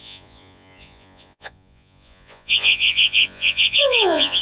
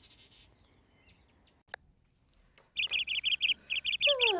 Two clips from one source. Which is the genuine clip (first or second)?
second